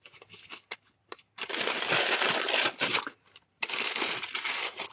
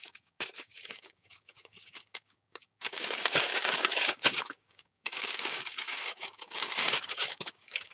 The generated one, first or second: second